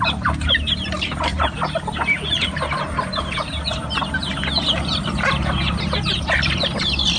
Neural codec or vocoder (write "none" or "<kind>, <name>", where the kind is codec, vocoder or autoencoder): vocoder, BigVGAN v2